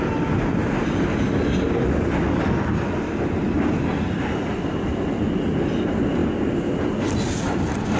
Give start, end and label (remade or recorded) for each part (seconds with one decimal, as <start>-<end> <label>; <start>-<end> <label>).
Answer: 0.0-8.0 recorded

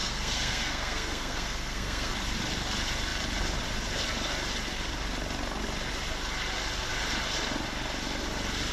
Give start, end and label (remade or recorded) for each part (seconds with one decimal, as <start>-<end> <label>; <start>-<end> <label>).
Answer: 0.0-2.1 remade; 2.1-8.7 recorded